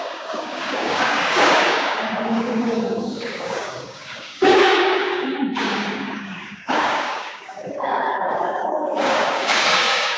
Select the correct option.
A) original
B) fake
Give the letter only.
B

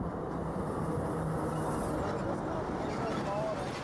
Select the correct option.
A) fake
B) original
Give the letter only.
B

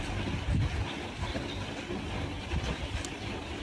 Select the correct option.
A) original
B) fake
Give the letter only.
A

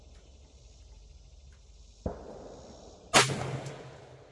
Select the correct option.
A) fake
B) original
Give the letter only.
B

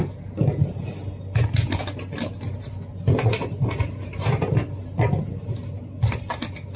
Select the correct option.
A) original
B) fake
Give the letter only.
A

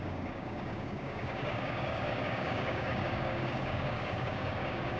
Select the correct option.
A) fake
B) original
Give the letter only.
A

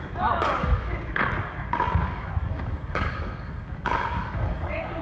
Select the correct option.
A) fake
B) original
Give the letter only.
A